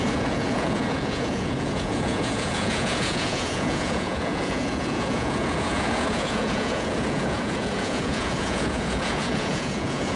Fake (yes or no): yes